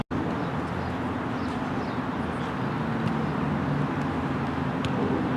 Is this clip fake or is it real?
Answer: real